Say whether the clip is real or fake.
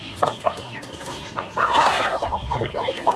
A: fake